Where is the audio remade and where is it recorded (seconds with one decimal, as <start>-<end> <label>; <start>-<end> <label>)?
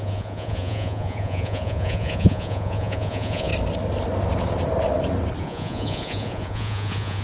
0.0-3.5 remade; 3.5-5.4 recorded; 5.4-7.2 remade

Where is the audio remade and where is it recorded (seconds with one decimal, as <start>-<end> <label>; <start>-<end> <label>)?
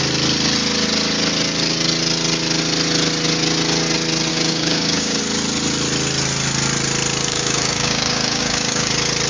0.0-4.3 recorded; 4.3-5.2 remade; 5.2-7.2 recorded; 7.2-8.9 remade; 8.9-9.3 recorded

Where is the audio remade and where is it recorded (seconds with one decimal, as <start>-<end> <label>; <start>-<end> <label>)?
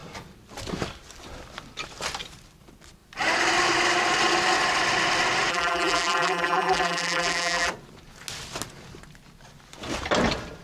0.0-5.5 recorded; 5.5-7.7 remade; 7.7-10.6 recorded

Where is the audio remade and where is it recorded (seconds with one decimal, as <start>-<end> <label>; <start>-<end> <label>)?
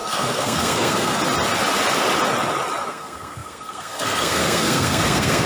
0.0-1.2 remade; 1.2-2.9 recorded; 2.9-5.5 remade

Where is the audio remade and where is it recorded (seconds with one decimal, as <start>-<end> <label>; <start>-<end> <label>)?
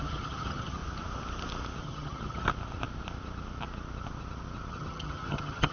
0.0-0.8 remade; 0.8-1.8 recorded; 1.8-2.5 remade; 2.5-4.7 recorded; 4.7-5.7 remade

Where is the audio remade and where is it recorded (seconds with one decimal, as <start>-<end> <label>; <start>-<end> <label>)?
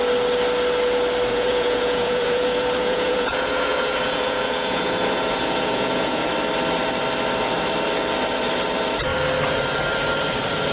0.0-1.3 recorded; 1.3-6.3 remade; 6.3-10.7 recorded